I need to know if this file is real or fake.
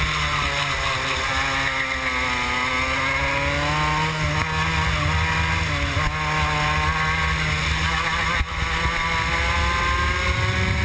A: real